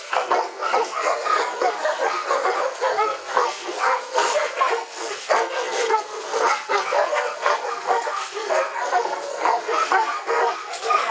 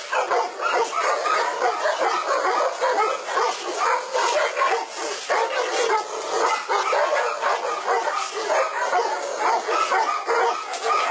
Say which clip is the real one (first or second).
second